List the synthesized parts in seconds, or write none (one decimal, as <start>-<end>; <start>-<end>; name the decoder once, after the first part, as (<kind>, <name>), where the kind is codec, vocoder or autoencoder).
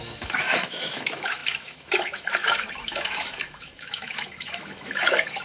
0.0-5.4 (autoencoder, DAC-VAE)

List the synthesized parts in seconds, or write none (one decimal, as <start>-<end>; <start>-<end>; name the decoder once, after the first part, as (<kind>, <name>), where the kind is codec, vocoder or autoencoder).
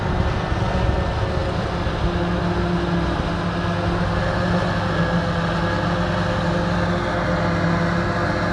none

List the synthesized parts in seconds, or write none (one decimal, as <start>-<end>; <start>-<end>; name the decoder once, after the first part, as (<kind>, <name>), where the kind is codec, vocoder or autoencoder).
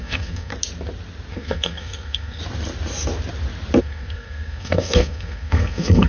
0.0-0.5 (codec, SNAC); 1.3-2.4; 3.8-6.1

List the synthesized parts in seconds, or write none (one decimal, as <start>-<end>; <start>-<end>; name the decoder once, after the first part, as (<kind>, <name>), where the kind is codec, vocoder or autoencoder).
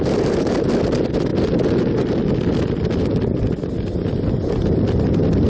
none